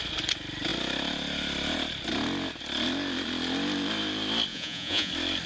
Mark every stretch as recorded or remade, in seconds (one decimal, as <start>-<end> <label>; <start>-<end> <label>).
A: 0.0-4.5 recorded; 4.5-5.1 remade; 5.1-5.5 recorded